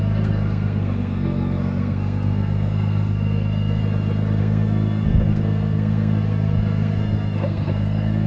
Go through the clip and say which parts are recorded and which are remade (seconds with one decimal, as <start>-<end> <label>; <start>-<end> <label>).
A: 0.0-3.8 remade; 3.8-4.4 recorded; 4.4-8.3 remade